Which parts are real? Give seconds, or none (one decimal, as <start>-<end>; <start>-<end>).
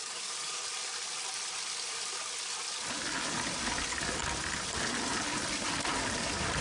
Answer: 0.6-6.6